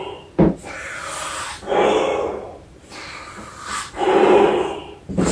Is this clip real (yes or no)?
yes